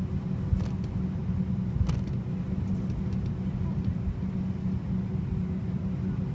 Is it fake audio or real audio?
real